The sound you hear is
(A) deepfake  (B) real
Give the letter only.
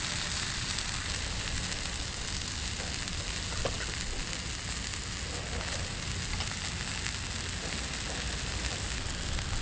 B